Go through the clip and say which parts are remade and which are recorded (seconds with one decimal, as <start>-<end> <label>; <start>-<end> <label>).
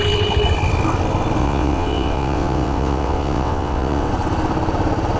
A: 0.0-1.4 recorded; 1.4-4.1 remade; 4.1-5.2 recorded